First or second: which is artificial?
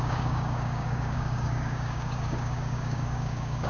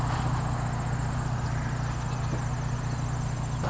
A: first